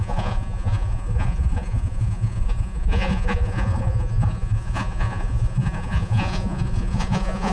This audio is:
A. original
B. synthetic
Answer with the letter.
B